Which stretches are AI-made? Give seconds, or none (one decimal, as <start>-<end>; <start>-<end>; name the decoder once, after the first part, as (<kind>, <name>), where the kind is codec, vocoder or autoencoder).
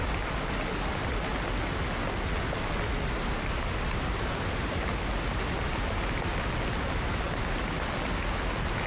none